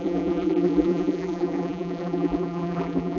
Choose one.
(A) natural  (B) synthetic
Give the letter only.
B